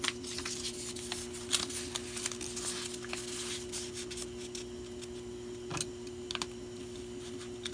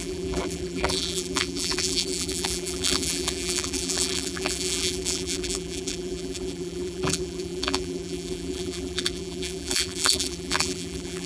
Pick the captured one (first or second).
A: first